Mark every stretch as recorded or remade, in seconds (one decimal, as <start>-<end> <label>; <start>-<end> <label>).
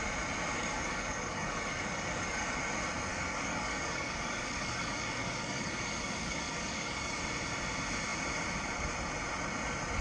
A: 0.0-0.6 recorded; 0.6-2.6 remade; 2.6-3.1 recorded; 3.1-7.2 remade; 7.2-10.0 recorded